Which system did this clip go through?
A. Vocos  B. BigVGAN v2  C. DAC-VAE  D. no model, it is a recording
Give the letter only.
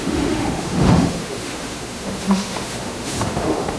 C